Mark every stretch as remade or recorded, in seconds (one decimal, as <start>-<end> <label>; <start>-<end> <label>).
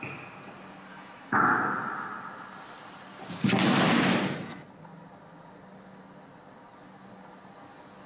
0.0-0.9 recorded; 0.9-1.4 remade; 1.4-8.1 recorded